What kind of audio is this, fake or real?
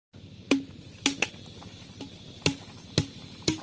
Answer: real